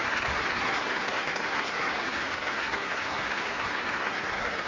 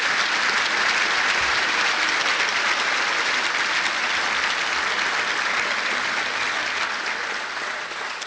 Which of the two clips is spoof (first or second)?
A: first